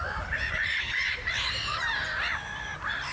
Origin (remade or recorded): remade